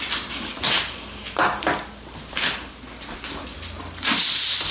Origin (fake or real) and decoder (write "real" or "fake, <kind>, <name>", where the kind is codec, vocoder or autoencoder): real